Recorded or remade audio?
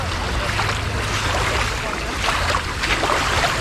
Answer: recorded